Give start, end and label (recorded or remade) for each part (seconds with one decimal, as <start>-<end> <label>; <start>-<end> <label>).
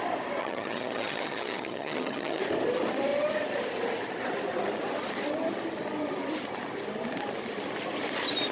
0.0-0.4 recorded; 0.4-2.4 remade; 2.4-8.5 recorded